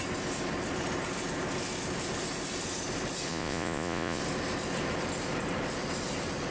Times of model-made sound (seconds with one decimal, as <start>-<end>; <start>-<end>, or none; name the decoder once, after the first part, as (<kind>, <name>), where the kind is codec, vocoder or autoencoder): 3.3-4.2 (vocoder, Vocos)